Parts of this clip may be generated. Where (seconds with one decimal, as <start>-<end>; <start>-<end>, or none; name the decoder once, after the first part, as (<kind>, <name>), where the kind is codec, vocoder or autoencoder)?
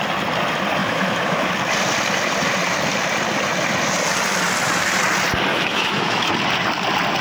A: 0.8-1.5 (autoencoder, DAC-VAE); 5.5-6.3